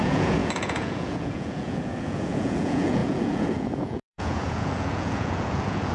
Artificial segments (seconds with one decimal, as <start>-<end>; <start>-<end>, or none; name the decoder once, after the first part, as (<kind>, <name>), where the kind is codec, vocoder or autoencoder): 0.0-5.9 (vocoder, Vocos)